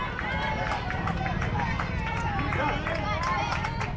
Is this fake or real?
real